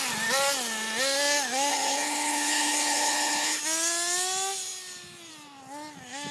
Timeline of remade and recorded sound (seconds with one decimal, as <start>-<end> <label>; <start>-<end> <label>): 0.0-1.7 recorded; 1.7-3.6 remade; 3.6-6.3 recorded

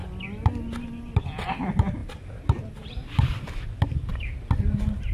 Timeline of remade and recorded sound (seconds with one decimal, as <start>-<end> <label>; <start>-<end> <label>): 0.0-5.1 recorded

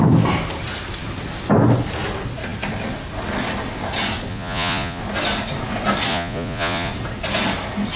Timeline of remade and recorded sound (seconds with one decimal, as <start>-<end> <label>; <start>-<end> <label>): 0.0-4.3 recorded; 4.3-5.0 remade; 5.0-6.1 recorded; 6.1-6.9 remade; 6.9-8.0 recorded

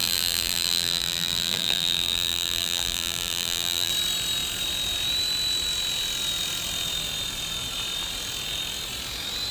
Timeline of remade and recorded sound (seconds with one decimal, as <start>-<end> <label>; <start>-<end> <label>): 0.0-3.9 remade; 3.9-9.5 recorded